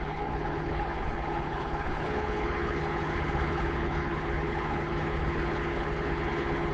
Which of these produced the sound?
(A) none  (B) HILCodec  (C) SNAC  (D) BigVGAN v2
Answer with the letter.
B